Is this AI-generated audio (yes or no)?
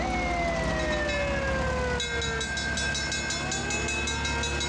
no